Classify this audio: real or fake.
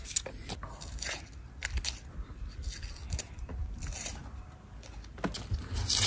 real